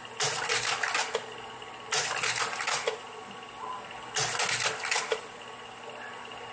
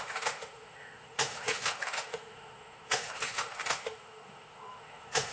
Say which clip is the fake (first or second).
second